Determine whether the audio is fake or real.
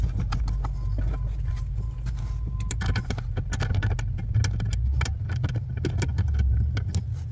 real